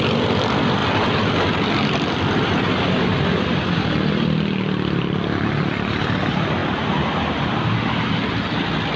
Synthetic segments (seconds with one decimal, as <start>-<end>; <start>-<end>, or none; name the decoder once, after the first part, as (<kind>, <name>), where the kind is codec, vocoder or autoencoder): 0.0-0.8 (vocoder, BigVGAN v2); 4.1-6.6